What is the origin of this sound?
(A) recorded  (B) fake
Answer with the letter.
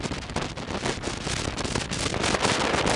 A